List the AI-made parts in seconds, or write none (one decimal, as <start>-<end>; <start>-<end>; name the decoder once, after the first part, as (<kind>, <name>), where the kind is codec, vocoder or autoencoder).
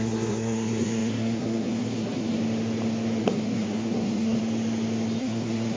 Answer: 0.0-2.4 (codec, SNAC); 3.2-4.4; 5.2-5.8